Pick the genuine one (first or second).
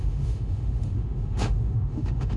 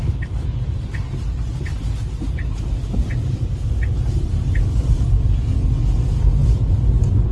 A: second